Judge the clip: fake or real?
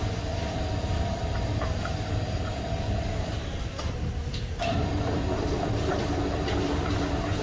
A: fake